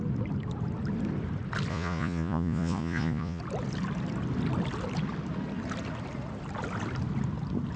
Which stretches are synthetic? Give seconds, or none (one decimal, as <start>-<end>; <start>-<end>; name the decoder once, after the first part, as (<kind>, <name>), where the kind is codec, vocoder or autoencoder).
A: 1.7-3.4 (vocoder, Vocos)